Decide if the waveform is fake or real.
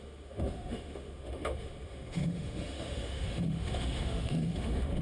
fake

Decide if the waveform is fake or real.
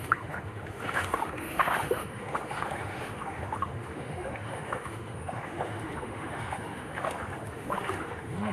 fake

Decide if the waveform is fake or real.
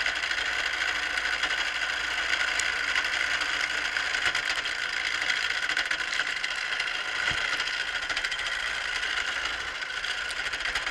real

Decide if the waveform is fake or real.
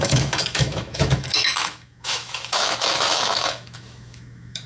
fake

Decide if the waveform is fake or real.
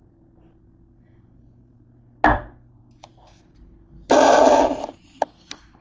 real